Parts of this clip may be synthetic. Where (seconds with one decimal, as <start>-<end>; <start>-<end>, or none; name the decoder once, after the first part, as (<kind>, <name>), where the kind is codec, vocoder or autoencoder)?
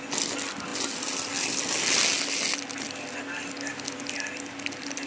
none